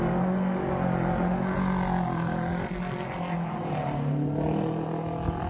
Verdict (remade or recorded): recorded